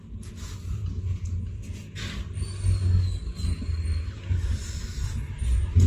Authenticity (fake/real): real